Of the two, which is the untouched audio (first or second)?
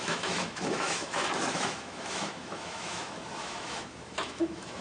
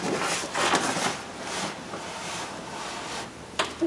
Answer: second